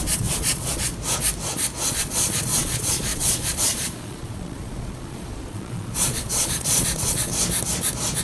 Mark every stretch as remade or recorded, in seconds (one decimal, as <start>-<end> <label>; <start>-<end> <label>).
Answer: 0.0-0.9 remade; 0.9-1.9 recorded; 1.9-7.3 remade; 7.3-8.2 recorded